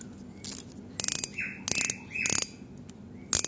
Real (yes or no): yes